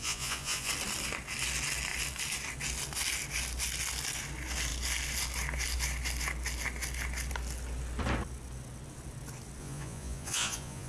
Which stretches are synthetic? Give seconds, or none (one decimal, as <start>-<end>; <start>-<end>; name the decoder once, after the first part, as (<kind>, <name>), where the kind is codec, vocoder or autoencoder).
0.0-0.7 (vocoder, Vocos); 9.6-10.9